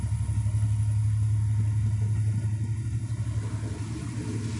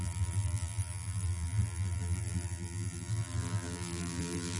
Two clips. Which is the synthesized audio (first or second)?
second